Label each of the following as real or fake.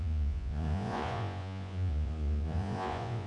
fake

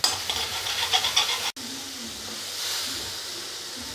real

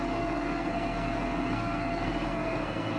fake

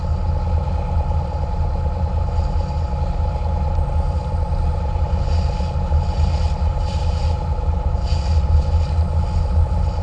real